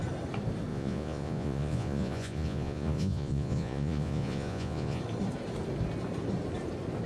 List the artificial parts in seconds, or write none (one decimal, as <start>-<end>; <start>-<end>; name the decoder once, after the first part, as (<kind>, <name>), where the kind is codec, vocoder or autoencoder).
0.7-5.0 (vocoder, Vocos)